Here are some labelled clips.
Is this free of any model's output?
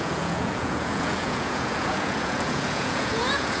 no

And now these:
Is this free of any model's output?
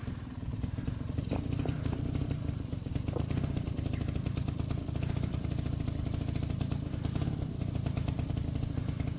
yes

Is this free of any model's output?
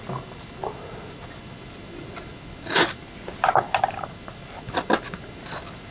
yes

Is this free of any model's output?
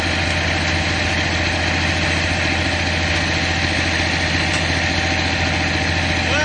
yes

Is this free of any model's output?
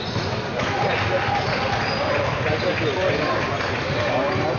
yes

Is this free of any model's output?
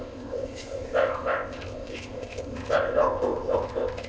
no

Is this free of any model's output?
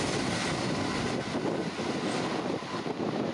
yes